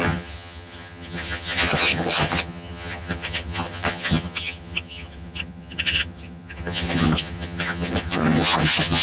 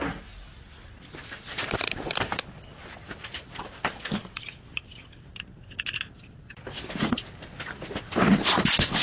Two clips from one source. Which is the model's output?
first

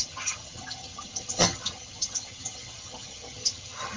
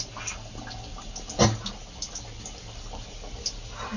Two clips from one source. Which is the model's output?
first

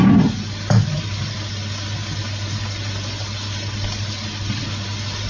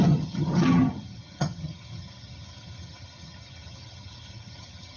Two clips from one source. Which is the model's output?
second